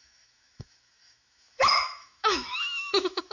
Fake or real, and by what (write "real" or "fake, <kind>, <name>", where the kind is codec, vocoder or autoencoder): fake, autoencoder, DAC-VAE